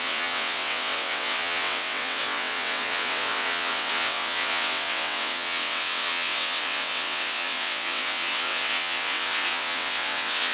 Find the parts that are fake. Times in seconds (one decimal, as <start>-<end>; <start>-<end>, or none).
0.0-10.5